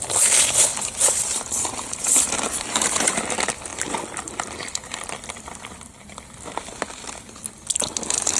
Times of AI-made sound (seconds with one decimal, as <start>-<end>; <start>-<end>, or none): 0.7-3.2; 3.7-5.9